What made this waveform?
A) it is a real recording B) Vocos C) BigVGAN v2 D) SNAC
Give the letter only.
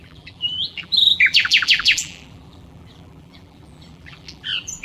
C